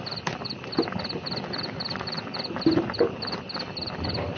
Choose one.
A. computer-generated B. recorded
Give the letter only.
B